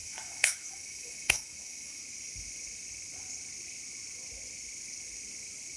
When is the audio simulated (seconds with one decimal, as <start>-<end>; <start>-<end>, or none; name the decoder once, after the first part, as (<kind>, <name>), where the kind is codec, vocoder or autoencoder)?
0.0-2.0 (autoencoder, DAC-VAE)